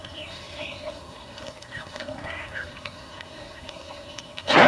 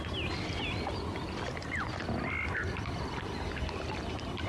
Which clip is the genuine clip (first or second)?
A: second